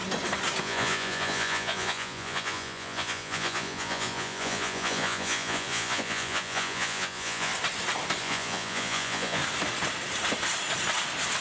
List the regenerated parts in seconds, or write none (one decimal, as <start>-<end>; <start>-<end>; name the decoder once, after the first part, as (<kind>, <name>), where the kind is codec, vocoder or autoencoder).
0.6-7.5 (vocoder, Vocos); 8.2-9.4